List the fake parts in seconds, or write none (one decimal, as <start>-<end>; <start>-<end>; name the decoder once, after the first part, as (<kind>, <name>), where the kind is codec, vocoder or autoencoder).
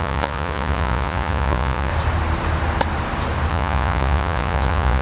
0.0-1.9 (vocoder, Vocos); 3.5-5.0